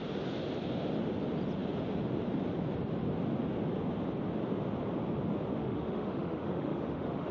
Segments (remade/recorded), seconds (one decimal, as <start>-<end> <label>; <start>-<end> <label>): 0.0-5.6 recorded; 5.6-7.3 remade